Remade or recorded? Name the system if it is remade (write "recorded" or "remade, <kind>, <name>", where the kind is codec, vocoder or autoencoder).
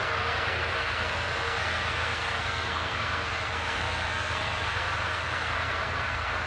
remade, codec, SNAC